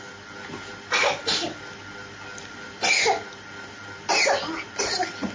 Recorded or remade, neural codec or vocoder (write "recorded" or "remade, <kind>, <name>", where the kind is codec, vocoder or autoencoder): recorded